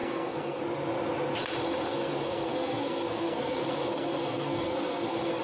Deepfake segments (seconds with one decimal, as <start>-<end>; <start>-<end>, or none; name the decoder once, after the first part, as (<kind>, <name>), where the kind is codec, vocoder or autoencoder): 0.0-0.6 (codec, SNAC); 1.9-5.4